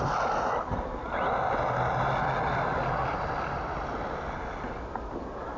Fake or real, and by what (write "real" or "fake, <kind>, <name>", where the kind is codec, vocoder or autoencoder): real